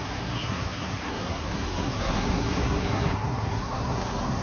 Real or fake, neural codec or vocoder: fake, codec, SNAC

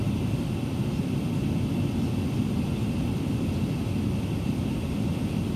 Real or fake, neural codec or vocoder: real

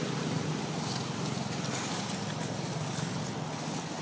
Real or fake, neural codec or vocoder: real